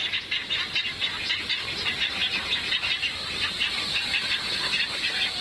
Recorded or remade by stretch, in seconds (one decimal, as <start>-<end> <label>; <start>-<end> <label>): 0.0-5.4 recorded